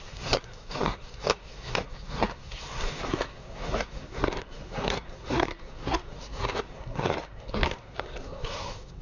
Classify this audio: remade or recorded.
remade